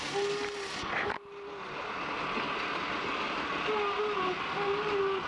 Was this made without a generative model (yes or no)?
yes